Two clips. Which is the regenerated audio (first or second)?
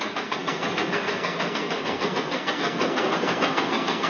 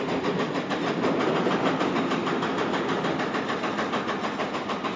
first